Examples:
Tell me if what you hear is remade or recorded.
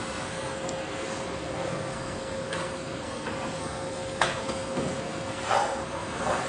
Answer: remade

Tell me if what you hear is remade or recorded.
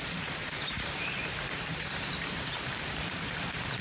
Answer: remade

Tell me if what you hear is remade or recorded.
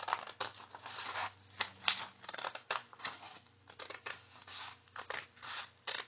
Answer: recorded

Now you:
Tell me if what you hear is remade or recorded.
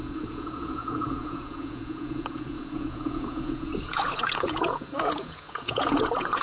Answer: remade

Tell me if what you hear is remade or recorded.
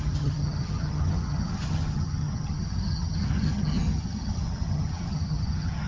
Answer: remade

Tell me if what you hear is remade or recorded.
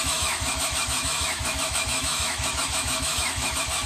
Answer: remade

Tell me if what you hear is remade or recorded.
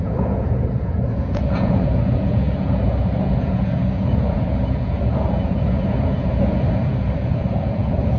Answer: remade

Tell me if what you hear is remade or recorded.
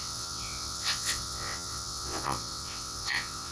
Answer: remade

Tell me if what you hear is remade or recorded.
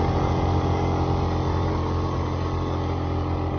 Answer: recorded